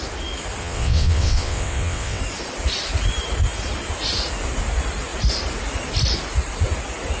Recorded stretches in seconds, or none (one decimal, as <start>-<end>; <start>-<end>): 0.0-0.6; 2.2-7.2

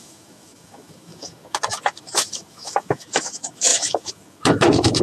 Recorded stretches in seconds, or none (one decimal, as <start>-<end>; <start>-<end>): none

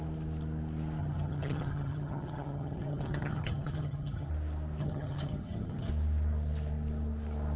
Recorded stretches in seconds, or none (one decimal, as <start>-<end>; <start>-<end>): 0.0-1.0; 4.3-4.8; 5.9-7.6

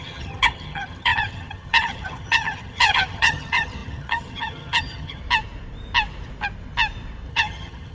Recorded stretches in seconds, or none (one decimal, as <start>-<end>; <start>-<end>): 5.2-7.3